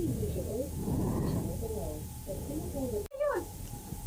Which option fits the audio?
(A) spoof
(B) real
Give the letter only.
B